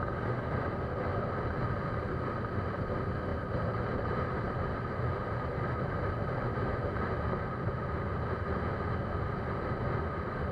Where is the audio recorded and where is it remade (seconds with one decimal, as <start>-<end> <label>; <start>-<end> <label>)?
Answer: 0.0-3.3 recorded; 3.3-8.2 remade; 8.2-10.5 recorded